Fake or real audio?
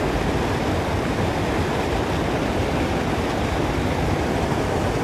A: real